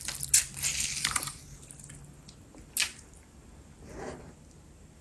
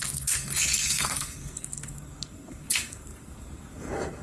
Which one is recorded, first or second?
first